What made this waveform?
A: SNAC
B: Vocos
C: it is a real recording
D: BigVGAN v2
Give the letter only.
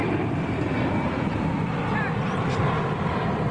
D